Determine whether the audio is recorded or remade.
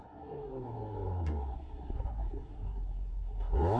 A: remade